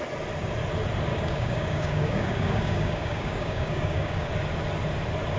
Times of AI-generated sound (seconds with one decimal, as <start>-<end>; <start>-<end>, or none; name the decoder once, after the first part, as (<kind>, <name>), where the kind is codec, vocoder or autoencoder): 1.1-4.3 (codec, DAC)